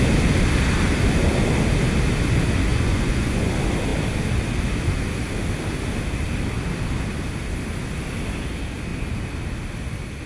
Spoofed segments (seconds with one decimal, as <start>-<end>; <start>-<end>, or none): 2.7-3.5